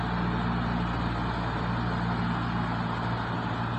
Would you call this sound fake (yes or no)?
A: no